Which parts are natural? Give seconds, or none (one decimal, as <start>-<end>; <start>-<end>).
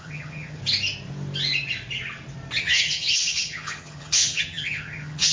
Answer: 0.6-2.6